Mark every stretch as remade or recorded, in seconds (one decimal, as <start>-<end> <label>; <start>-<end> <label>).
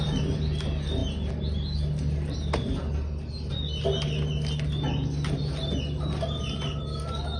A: 0.0-7.4 recorded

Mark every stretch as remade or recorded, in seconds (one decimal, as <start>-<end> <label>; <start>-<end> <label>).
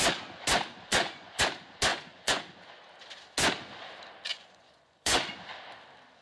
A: 0.0-0.9 recorded; 0.9-1.4 remade; 1.4-1.9 recorded; 1.9-2.4 remade; 2.4-4.3 recorded; 4.3-5.3 remade; 5.3-6.2 recorded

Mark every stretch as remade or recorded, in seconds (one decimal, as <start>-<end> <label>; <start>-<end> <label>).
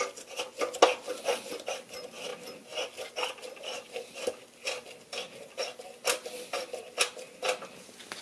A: 0.0-8.2 recorded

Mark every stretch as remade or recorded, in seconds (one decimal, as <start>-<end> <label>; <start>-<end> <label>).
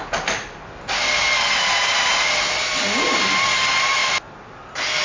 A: 0.0-5.0 recorded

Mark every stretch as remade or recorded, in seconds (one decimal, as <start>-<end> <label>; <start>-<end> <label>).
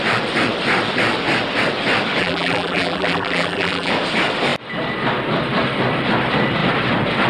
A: 0.0-2.2 recorded; 2.2-3.9 remade; 3.9-7.3 recorded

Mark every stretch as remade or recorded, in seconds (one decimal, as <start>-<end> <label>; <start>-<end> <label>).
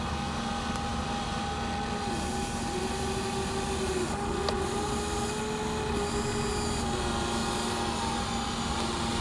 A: 0.0-9.2 recorded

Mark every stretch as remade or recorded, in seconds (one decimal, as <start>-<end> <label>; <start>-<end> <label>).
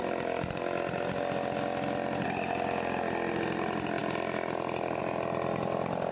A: 0.0-6.1 recorded